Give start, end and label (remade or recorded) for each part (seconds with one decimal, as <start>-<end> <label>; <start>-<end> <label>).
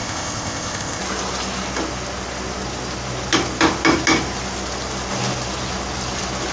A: 0.0-1.0 remade; 1.0-6.5 recorded